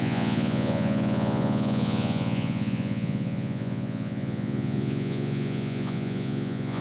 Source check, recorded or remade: remade